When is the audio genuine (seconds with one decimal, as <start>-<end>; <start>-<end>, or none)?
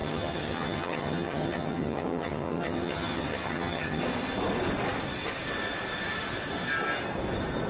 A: 4.0-7.7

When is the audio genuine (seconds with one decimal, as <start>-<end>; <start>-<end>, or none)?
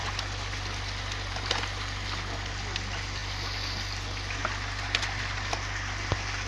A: 0.0-6.5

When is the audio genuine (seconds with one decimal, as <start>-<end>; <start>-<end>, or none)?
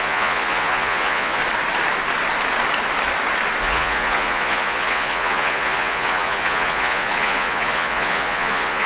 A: 1.4-3.6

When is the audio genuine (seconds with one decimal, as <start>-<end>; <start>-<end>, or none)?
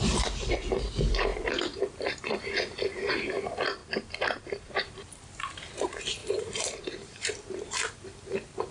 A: 3.8-4.4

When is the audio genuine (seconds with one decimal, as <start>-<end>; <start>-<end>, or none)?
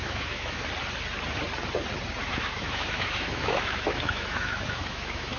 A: 0.7-2.2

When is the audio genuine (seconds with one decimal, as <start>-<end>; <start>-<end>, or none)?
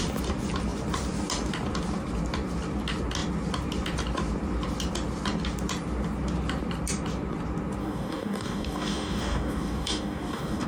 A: 0.0-7.8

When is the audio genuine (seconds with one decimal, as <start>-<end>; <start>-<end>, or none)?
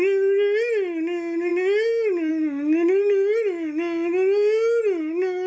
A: 0.0-5.5